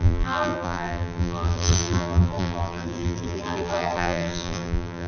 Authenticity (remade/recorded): remade